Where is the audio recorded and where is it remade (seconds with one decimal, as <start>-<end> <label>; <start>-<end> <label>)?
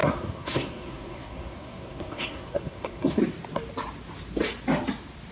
0.0-3.2 remade; 3.2-5.3 recorded